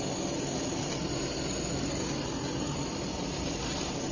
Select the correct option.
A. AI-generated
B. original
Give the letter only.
B